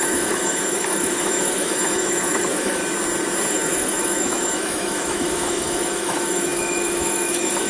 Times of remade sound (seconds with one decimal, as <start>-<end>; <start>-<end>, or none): 0.0-2.8; 3.5-7.7